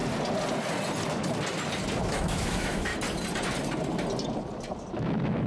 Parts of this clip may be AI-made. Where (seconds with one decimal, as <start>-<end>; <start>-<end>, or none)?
2.1-2.9; 4.9-5.5